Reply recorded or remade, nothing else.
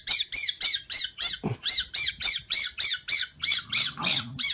remade